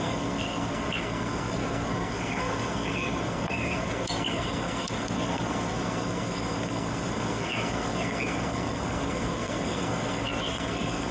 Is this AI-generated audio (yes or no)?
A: yes